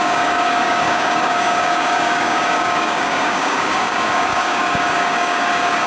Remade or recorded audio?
remade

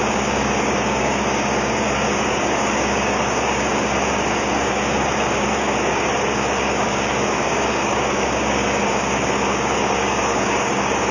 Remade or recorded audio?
remade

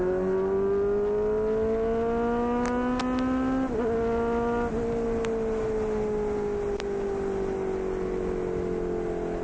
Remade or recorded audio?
recorded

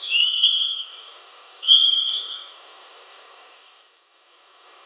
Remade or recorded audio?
remade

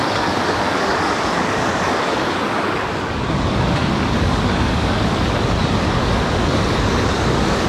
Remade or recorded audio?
remade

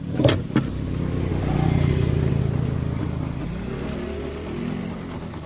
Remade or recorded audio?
recorded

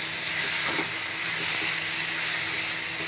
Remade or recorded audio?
recorded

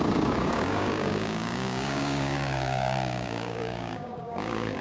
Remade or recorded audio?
remade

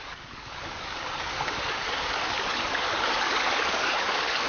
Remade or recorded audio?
remade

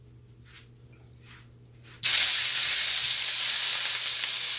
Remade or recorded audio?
recorded